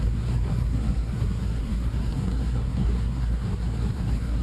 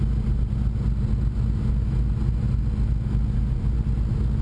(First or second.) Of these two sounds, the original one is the second